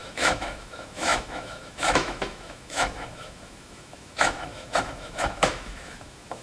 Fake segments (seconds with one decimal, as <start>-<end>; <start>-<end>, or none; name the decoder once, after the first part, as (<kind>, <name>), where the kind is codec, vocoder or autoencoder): 0.0-6.4 (autoencoder, DAC-VAE)